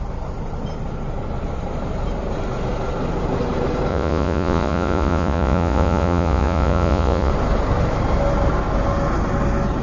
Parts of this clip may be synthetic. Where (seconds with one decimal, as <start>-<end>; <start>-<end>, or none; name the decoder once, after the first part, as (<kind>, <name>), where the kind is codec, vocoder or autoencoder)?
3.9-7.3 (vocoder, Vocos)